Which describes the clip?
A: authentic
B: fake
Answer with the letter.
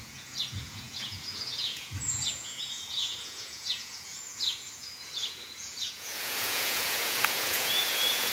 B